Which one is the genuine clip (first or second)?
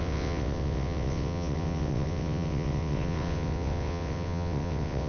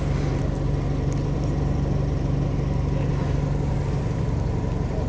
second